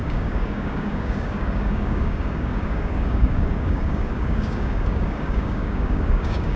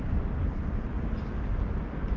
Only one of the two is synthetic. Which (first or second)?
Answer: first